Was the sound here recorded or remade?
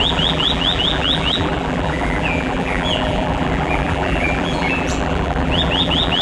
remade